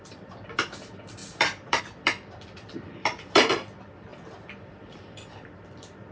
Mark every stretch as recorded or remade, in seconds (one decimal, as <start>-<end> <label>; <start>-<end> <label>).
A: 0.0-4.1 remade; 4.1-4.9 recorded; 4.9-6.1 remade